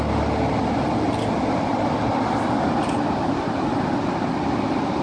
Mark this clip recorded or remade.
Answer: recorded